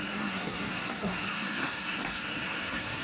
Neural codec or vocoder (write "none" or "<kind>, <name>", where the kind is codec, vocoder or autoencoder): codec, SNAC